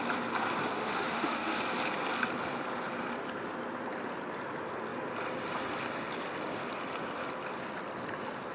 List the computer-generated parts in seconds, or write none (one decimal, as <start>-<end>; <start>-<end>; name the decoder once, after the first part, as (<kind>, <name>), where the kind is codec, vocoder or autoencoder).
0.8-1.6 (autoencoder, DAC-VAE)